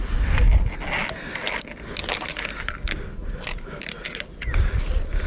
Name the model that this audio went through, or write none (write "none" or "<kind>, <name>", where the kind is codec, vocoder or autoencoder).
none